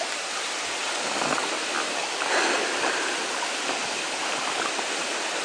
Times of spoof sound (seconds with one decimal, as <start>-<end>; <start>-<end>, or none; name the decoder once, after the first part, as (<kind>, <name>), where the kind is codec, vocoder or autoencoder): none